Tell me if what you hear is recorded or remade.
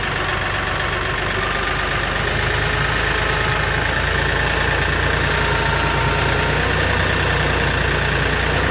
recorded